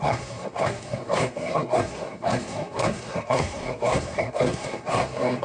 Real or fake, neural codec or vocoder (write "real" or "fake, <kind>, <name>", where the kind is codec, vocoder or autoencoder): fake, codec, SNAC